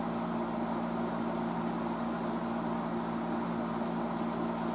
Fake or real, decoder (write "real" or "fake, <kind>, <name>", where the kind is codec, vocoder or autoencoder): real